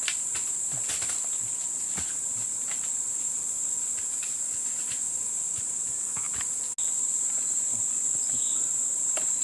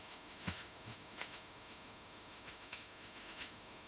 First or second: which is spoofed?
second